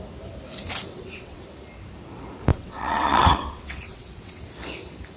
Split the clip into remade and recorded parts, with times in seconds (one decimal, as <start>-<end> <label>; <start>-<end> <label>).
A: 0.0-0.9 recorded; 0.9-1.4 remade; 1.4-2.5 recorded; 2.5-4.4 remade; 4.4-5.2 recorded